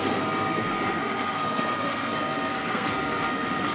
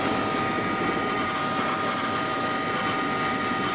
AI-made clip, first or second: first